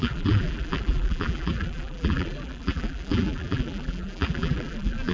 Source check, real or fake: fake